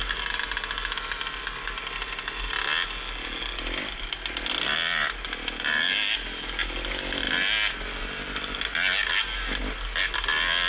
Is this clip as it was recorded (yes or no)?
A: yes